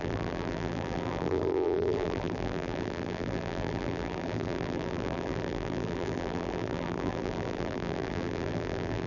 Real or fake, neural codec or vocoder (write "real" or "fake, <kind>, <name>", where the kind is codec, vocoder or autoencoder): fake, vocoder, BigVGAN v2